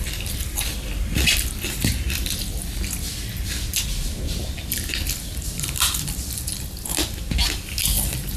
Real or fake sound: fake